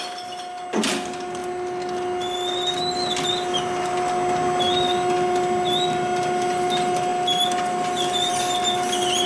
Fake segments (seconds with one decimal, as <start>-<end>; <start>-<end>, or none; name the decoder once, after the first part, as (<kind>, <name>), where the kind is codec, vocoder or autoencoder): none